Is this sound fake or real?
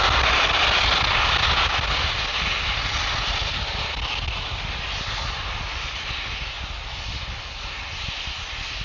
real